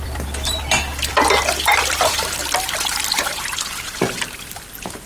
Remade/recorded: remade